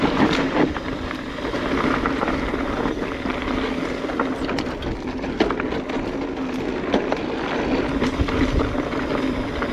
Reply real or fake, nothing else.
real